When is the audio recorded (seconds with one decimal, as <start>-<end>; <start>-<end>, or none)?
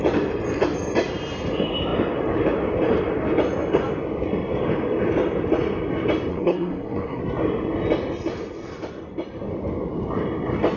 0.0-6.3; 7.2-10.8